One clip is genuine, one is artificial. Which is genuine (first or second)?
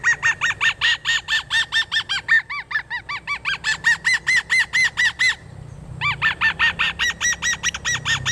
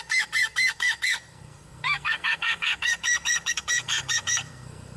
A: first